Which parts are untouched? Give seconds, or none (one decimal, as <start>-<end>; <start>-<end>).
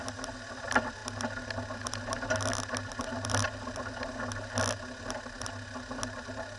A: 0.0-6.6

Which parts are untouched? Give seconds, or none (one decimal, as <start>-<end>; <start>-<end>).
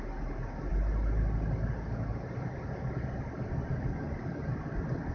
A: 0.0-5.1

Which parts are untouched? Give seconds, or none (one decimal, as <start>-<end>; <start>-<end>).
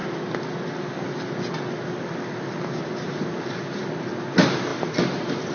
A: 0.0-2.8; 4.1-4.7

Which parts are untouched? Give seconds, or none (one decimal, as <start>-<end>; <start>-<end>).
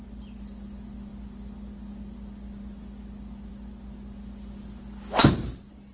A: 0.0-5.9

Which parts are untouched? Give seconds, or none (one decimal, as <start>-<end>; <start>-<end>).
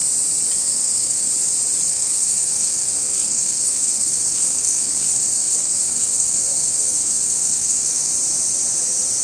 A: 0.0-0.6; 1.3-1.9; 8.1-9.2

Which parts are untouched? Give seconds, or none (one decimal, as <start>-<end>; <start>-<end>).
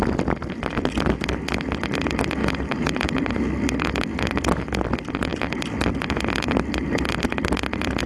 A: 0.0-2.4; 3.4-8.1